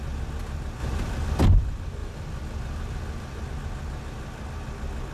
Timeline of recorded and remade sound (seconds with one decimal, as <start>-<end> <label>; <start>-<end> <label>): 0.0-0.8 recorded; 0.8-1.4 remade; 1.4-2.0 recorded; 2.0-3.4 remade; 3.4-5.1 recorded

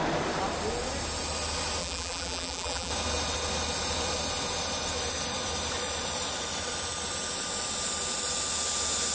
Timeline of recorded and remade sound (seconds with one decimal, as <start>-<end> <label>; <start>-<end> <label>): 0.0-1.8 recorded; 1.8-2.9 remade; 2.9-9.1 recorded